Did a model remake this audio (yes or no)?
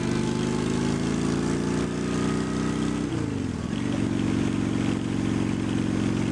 no